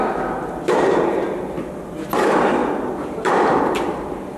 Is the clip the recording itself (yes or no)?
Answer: yes